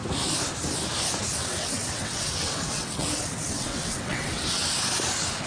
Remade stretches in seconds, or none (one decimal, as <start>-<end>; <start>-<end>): 1.4-4.7